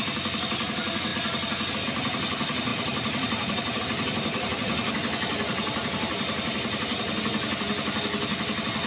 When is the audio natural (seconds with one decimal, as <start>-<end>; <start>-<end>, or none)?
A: 0.0-2.7; 3.8-5.5; 7.2-8.9

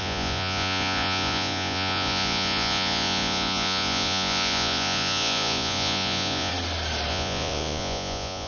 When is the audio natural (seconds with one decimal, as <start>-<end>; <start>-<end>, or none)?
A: 6.5-7.1